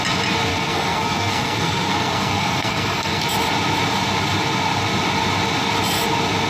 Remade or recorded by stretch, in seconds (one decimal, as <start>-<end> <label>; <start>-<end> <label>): 0.0-0.5 recorded; 0.5-3.2 remade; 3.2-6.5 recorded